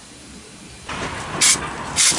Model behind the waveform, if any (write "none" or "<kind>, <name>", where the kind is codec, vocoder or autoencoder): none